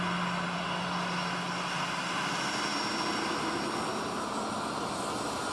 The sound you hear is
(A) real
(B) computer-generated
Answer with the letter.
A